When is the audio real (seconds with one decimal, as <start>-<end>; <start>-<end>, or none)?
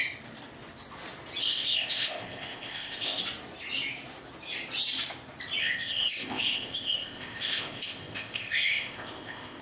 0.0-1.4; 3.2-5.6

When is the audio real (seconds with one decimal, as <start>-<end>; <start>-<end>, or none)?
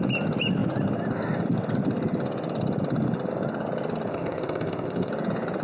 0.0-4.1; 5.1-5.6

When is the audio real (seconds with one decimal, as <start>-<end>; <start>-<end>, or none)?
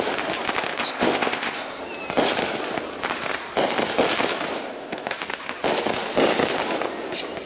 0.0-0.8; 1.8-4.7; 5.2-7.5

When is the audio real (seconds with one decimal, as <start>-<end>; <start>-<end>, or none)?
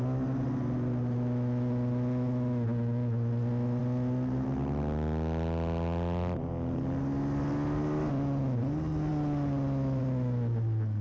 0.0-11.0